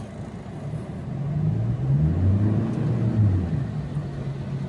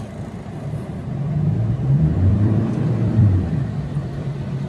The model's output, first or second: second